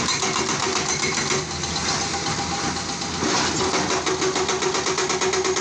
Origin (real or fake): real